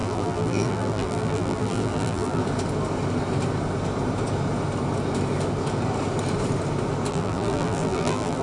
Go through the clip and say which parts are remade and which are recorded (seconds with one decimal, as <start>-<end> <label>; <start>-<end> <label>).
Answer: 0.0-2.4 remade; 2.4-7.1 recorded; 7.1-8.4 remade